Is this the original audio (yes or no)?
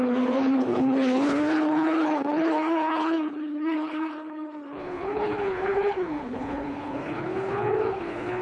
no